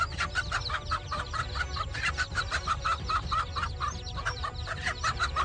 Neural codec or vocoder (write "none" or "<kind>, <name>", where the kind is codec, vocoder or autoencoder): none